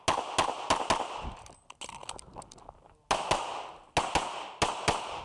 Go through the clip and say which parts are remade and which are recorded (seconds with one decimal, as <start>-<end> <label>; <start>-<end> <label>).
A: 0.0-5.2 recorded